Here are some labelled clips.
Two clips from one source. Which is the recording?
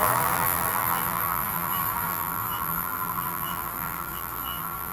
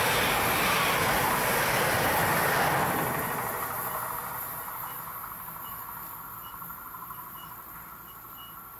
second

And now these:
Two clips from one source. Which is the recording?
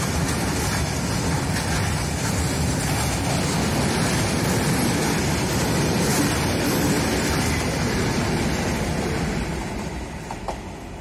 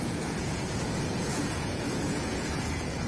first